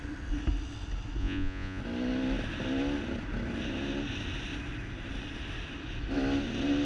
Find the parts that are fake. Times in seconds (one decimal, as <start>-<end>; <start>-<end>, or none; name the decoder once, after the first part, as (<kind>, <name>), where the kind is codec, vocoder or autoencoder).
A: 1.2-1.8 (vocoder, Vocos)